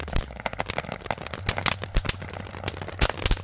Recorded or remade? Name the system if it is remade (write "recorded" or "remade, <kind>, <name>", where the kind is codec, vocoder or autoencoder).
recorded